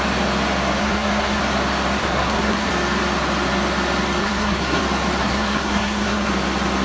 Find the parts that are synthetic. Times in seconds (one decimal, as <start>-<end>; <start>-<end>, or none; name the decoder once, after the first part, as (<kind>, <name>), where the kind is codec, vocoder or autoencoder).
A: 0.8-1.4 (codec, SNAC); 2.0-2.7; 4.2-4.8; 5.2-6.3